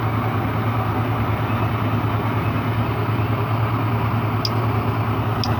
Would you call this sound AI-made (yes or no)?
no